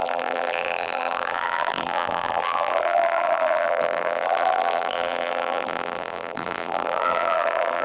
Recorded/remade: remade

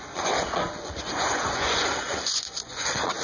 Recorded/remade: remade